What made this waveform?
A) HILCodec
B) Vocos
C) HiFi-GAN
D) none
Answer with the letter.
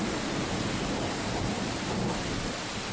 D